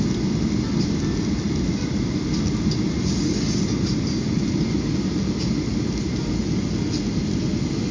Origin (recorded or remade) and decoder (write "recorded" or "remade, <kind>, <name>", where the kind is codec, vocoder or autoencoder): recorded